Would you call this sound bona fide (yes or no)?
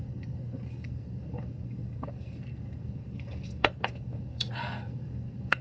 no